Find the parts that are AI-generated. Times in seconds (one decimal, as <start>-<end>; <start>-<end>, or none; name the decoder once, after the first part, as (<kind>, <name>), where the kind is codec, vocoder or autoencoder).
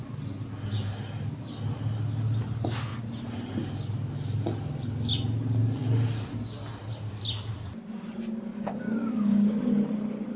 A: 8.5-9.6 (codec, DAC)